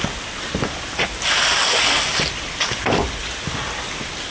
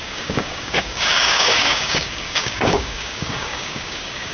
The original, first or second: first